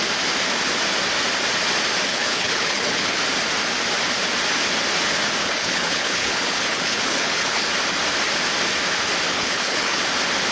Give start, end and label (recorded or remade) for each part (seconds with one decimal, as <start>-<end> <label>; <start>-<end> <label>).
0.0-2.1 recorded; 2.1-3.2 remade; 3.2-5.4 recorded; 5.4-7.7 remade; 7.7-9.3 recorded; 9.3-10.0 remade; 10.0-10.5 recorded